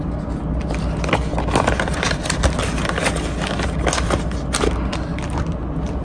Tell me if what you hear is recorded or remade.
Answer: recorded